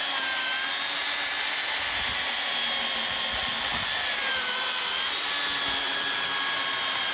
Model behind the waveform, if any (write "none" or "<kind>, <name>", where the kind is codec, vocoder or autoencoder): none